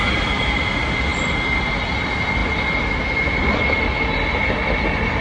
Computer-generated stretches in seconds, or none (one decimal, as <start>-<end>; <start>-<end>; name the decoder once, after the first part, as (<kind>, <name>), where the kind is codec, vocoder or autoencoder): none